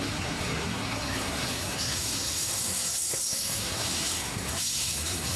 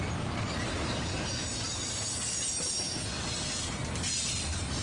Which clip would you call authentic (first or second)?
second